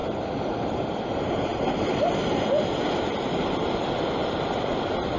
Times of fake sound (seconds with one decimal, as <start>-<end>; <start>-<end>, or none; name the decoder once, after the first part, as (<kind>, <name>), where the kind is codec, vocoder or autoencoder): 0.0-1.1 (vocoder, BigVGAN v2); 1.5-4.6